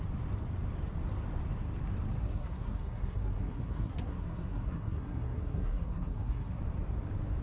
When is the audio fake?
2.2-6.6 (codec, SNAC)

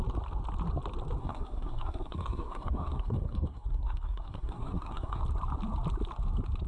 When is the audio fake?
1.2-5.2 (codec, SNAC)

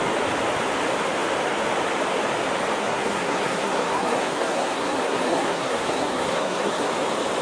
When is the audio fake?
2.8-6.9 (codec, SNAC)

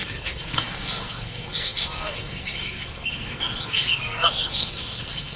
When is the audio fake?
0.0-5.4 (codec, SNAC)

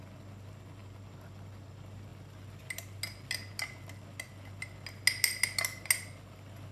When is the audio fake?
none

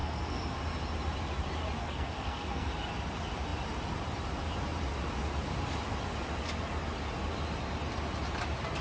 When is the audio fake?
0.0-0.6 (codec, SNAC); 1.8-2.7

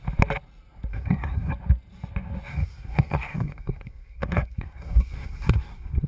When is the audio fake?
0.9-1.5 (codec, SNAC); 2.5-6.1

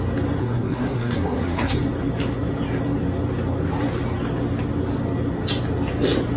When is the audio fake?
0.4-1.8 (codec, SNAC)